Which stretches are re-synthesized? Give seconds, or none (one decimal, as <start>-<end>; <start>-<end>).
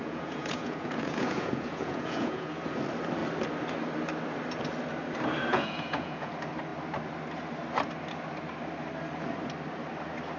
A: 0.0-2.6; 5.5-6.3